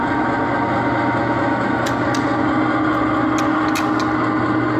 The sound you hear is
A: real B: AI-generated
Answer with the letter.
A